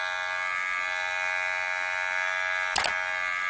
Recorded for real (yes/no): yes